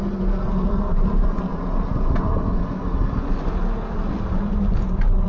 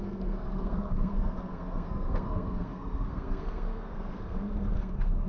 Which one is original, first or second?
first